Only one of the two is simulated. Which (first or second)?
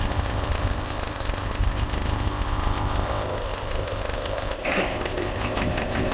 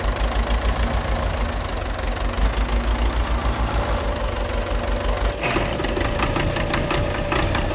first